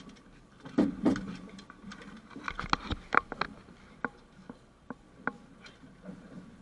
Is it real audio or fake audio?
real